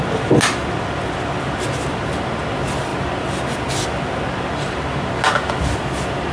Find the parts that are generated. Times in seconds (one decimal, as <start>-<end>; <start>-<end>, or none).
none

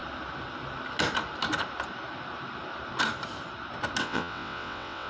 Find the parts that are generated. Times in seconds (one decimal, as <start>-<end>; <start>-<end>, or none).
4.0-5.1

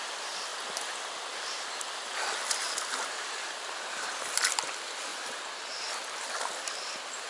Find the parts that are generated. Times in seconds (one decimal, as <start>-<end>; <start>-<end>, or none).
none